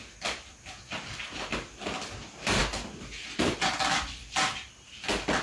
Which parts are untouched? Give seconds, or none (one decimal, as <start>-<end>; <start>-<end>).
0.0-5.4